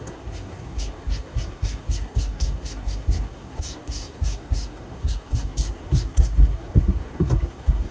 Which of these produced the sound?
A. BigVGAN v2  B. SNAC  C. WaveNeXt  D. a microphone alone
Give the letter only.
B